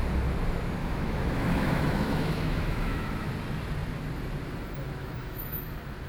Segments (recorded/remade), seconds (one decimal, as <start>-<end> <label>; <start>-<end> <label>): 0.0-0.8 recorded; 0.8-3.3 remade; 3.3-5.0 recorded; 5.0-5.6 remade; 5.6-6.1 recorded